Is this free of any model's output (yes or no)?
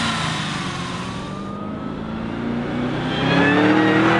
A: yes